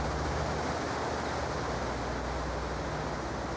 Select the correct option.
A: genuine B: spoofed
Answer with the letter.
A